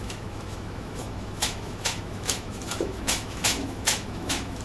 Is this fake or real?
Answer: fake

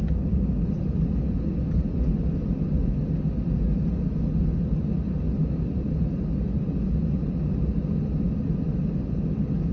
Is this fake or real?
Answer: real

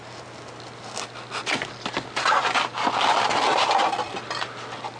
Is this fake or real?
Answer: real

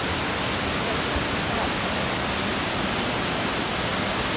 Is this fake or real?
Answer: real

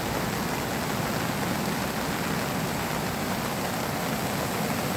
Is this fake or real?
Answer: real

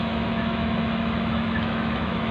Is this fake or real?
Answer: fake